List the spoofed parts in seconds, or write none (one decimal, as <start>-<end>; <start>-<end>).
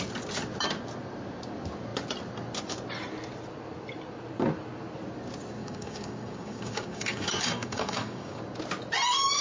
5.6-8.4